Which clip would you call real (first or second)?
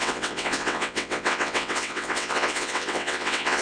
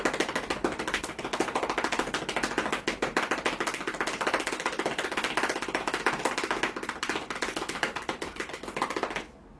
second